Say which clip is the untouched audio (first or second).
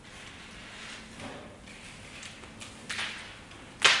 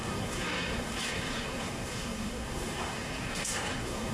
first